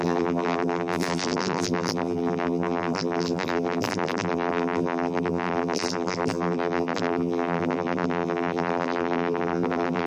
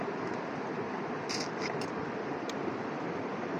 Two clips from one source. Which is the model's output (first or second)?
first